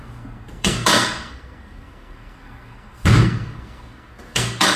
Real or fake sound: fake